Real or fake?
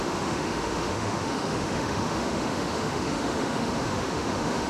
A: fake